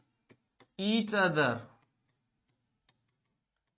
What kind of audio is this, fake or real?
real